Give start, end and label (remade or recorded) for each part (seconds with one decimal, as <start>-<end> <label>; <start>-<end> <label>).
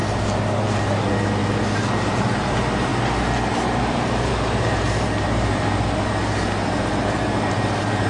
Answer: 0.0-1.4 remade; 1.4-1.9 recorded; 1.9-2.9 remade; 2.9-3.5 recorded; 3.5-8.1 remade